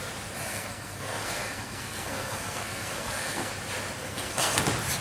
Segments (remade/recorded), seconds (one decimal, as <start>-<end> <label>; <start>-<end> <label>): 0.0-0.5 recorded; 0.5-3.5 remade; 3.5-4.0 recorded; 4.0-4.6 remade; 4.6-5.0 recorded